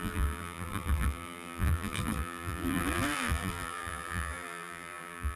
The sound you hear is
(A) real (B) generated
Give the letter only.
B